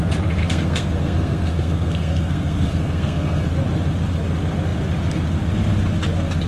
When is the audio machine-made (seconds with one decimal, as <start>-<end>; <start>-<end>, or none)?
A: 0.4-3.5